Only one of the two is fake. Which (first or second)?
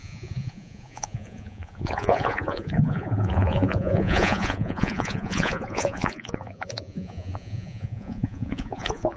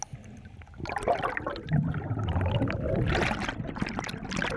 first